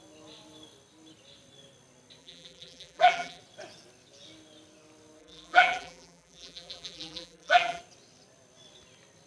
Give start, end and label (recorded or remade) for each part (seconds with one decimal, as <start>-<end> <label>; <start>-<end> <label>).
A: 0.0-2.2 recorded; 2.2-3.4 remade; 3.4-5.2 recorded; 5.2-7.8 remade; 7.8-9.3 recorded